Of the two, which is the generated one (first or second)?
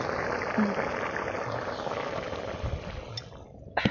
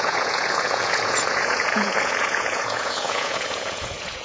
second